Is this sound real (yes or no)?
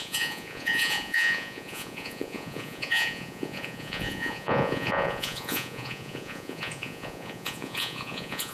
no